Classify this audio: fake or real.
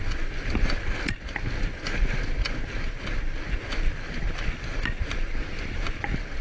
real